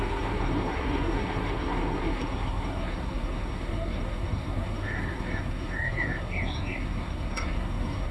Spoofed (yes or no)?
yes